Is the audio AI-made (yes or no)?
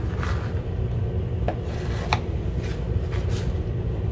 no